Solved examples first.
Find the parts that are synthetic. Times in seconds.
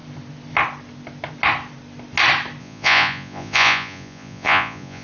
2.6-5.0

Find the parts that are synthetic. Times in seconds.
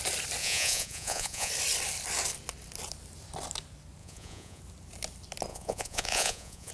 0.4-1.5; 4.0-4.6; 5.5-6.7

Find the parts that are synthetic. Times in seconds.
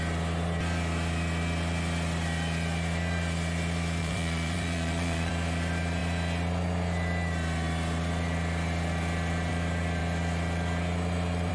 4.0-5.3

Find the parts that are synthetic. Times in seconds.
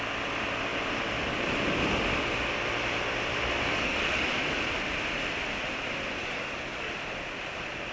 3.7-4.3; 6.2-6.9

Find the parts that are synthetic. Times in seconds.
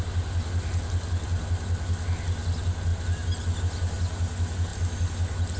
none